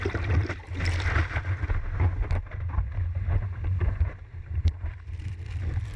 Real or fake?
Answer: fake